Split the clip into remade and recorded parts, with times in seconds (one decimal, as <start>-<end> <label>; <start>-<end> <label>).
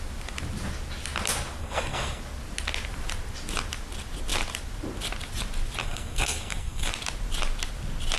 0.0-1.6 recorded; 1.6-2.2 remade; 2.2-5.8 recorded; 5.8-6.9 remade; 6.9-8.2 recorded